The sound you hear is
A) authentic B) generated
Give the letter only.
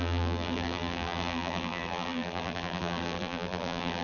B